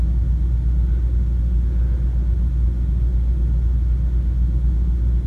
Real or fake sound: real